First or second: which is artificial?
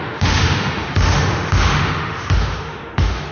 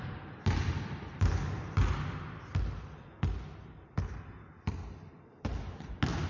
first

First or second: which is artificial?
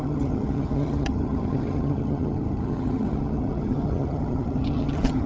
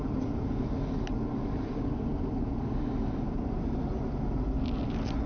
first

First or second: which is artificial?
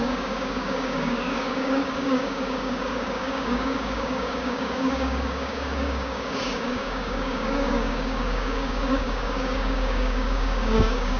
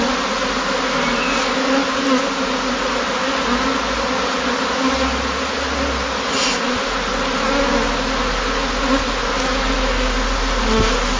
first